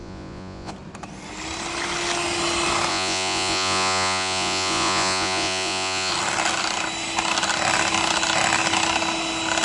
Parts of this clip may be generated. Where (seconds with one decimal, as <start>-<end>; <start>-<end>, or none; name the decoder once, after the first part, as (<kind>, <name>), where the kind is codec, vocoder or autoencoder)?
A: 0.0-0.7 (vocoder, Vocos); 2.9-6.1